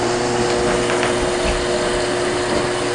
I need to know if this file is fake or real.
real